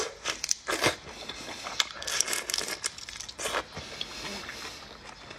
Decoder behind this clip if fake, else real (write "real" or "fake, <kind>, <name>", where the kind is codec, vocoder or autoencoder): real